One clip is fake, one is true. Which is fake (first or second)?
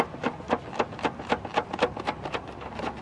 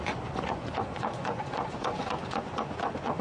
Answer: second